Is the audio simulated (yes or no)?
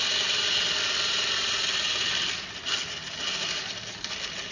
no